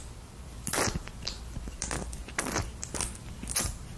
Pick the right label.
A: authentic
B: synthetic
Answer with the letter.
B